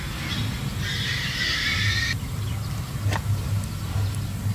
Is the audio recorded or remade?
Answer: recorded